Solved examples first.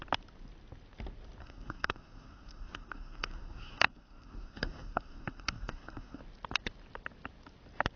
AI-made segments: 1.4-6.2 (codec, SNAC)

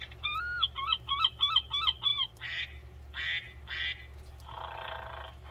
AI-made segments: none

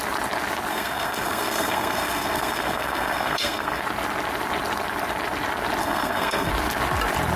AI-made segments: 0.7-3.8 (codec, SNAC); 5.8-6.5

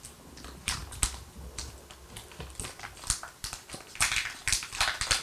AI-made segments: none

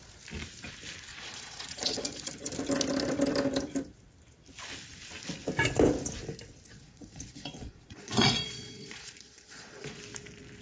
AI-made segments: 1.1-2.3 (vocoder, Vocos); 6.7-10.0

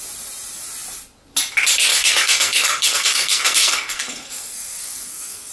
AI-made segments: 1.9-5.5 (codec, SNAC)